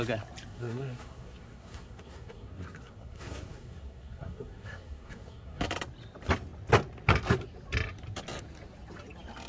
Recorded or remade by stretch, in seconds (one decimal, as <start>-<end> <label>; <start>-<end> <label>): 0.0-0.5 recorded; 0.5-5.6 remade; 5.6-9.5 recorded